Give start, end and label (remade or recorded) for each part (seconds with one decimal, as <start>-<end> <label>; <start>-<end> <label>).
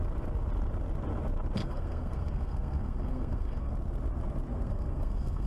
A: 0.0-1.6 recorded; 1.6-3.7 remade; 3.7-4.5 recorded; 4.5-5.5 remade